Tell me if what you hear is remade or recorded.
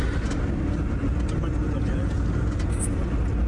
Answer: recorded